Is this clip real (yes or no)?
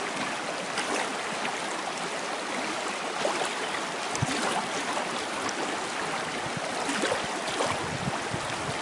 yes